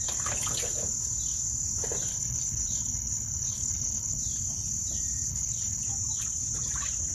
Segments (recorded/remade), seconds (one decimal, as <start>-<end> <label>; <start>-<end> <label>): 0.0-2.1 recorded; 2.1-4.2 remade; 4.2-5.3 recorded; 5.3-5.8 remade; 5.8-7.1 recorded